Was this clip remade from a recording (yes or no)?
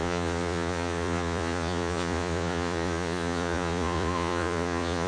yes